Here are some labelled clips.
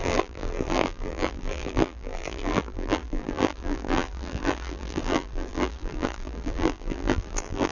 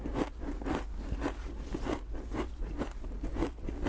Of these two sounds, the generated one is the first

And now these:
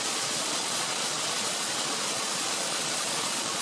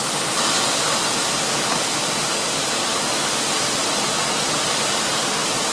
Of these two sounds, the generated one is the first